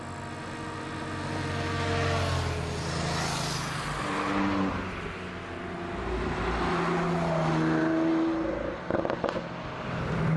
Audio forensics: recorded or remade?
recorded